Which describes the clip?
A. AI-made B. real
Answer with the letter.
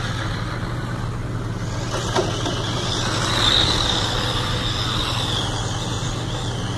B